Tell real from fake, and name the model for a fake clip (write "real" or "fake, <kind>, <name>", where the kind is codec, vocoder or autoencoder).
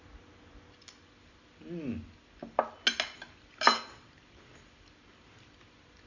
real